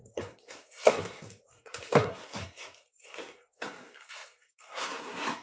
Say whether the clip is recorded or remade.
remade